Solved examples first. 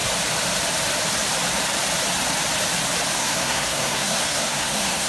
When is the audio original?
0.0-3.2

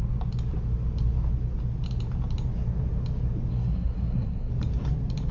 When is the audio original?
0.0-3.5; 4.5-5.3